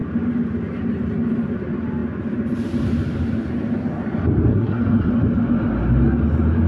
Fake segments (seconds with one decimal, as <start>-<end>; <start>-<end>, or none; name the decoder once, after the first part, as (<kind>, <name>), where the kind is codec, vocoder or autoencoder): 4.5-5.1 (codec, SNAC)

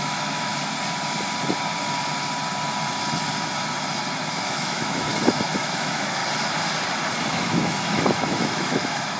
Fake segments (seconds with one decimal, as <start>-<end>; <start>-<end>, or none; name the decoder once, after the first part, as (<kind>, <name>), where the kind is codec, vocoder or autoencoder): 0.0-0.5 (autoencoder, DAC-VAE); 4.3-5.1; 5.6-6.2; 7.3-9.2

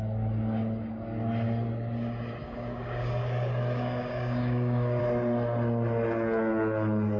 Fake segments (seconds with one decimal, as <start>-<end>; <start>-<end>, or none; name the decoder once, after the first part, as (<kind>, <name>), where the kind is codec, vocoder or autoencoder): 2.4-5.0 (codec, DAC)

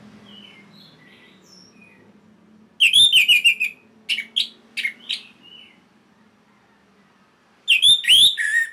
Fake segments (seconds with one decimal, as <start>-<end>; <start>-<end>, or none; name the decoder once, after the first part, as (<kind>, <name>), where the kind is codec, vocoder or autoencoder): none

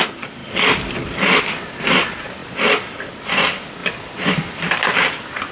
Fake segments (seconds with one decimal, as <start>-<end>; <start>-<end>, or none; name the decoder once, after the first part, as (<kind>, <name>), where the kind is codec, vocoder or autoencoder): 0.0-0.4 (vocoder, BigVGAN v2); 1.4-2.4; 3.1-5.5

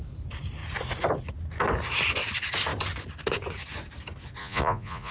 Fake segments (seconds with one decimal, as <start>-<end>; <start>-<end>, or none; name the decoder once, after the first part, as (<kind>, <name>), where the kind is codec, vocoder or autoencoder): 4.4-5.1 (vocoder, Vocos)

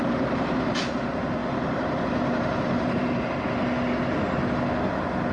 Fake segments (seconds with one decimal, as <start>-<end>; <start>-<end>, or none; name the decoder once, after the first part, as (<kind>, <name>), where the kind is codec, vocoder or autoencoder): 1.4-3.2 (vocoder, BigVGAN v2)